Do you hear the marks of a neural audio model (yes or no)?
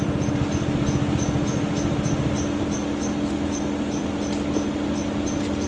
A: no